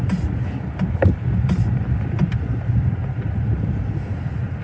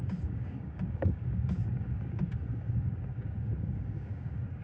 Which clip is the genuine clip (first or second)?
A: first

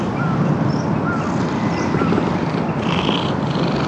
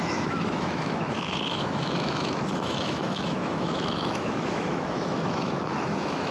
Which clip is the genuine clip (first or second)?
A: first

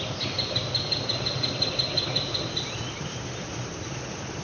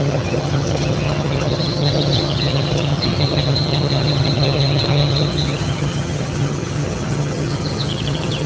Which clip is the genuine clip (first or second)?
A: first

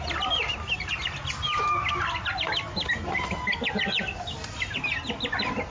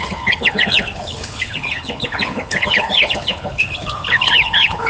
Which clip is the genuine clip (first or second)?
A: first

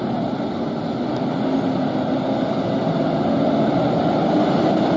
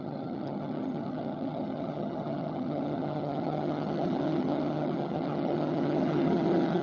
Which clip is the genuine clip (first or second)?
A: first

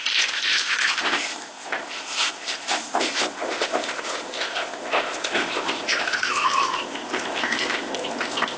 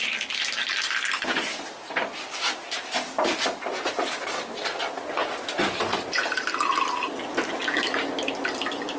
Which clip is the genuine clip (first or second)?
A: second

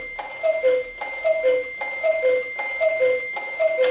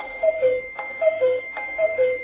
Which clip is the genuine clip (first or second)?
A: first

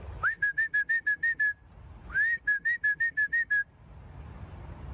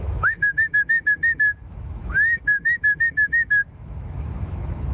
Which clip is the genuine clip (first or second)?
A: first